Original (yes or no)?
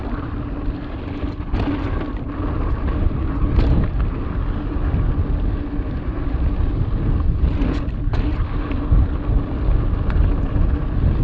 yes